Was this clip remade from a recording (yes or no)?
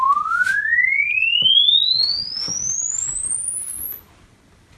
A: no